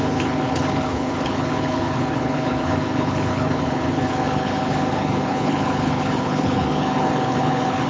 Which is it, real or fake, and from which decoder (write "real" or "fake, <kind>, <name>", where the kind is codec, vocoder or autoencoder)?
fake, codec, HILCodec